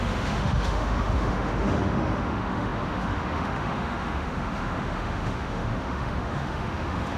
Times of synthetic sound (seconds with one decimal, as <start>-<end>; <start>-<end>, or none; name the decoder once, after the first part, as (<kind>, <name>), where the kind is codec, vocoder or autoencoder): 0.0-7.2 (autoencoder, DAC-VAE)